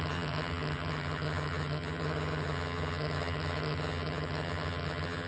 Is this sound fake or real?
fake